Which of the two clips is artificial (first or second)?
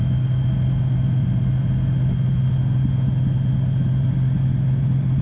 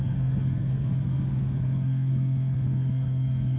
second